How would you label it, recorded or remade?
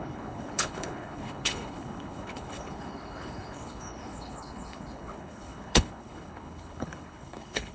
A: remade